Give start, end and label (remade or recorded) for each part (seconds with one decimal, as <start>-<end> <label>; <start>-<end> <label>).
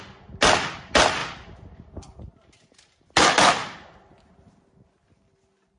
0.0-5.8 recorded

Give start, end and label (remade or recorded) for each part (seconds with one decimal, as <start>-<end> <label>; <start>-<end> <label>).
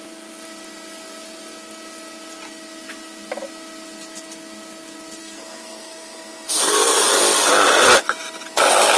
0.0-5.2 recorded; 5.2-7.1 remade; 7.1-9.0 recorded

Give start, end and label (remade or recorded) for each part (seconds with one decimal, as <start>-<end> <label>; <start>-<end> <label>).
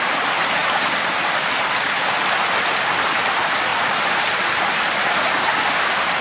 0.0-3.7 recorded; 3.7-5.4 remade; 5.4-6.2 recorded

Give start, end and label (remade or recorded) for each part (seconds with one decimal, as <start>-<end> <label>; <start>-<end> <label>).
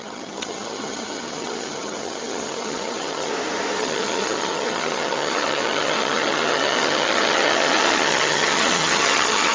0.0-3.3 remade; 3.3-3.8 recorded; 3.8-9.5 remade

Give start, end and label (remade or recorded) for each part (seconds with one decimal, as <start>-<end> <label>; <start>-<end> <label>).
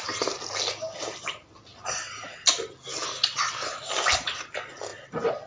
0.0-5.5 recorded